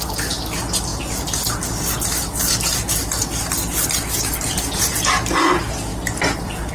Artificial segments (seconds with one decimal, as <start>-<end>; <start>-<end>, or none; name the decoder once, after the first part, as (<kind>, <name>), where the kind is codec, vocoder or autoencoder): none